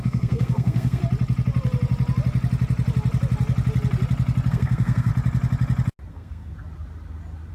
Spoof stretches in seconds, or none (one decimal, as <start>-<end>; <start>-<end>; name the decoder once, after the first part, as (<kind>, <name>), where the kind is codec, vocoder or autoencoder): 0.0-1.0 (codec, SNAC); 4.5-5.1; 6.1-6.5